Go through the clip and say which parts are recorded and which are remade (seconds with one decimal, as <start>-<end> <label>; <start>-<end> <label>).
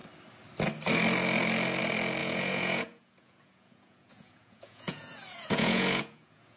0.0-2.2 recorded; 2.2-6.6 remade